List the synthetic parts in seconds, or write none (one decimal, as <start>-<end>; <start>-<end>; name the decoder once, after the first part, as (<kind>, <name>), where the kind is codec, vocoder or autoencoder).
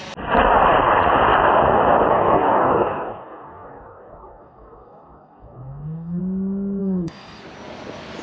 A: 2.1-6.2 (codec, DAC); 6.8-7.4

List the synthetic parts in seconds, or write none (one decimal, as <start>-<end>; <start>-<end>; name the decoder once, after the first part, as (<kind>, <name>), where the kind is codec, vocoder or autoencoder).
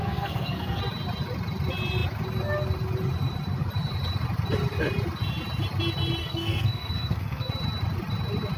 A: 0.0-0.8 (codec, SNAC); 6.2-7.5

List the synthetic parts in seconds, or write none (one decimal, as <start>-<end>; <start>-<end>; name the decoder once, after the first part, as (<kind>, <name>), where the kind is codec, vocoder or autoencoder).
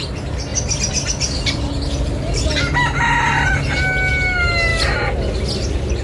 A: none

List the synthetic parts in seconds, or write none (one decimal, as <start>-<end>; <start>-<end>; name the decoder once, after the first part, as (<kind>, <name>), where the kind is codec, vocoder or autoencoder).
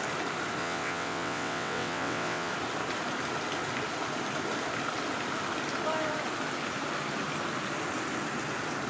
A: 0.6-2.5 (vocoder, WaveNeXt)